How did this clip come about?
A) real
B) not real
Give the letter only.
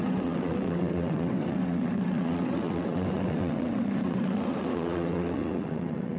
B